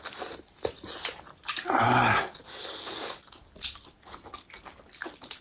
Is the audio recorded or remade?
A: recorded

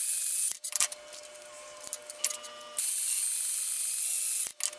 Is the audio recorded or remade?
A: recorded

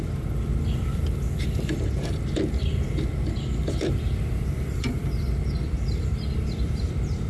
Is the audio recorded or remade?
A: remade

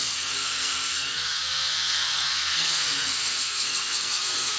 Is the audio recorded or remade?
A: remade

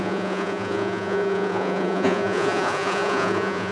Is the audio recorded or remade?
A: remade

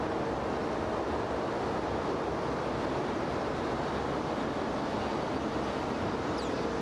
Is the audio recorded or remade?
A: recorded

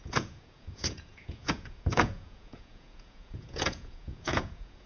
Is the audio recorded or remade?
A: remade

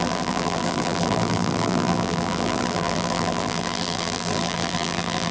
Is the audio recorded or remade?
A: remade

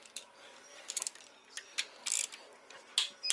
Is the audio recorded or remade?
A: recorded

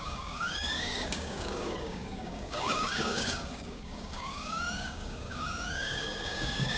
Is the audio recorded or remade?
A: remade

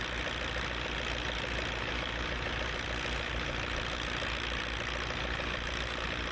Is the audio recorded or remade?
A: recorded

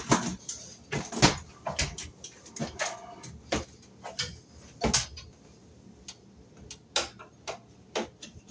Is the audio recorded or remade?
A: recorded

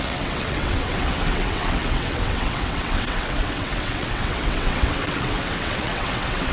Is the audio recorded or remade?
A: remade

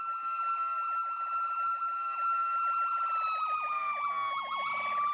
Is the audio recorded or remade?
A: recorded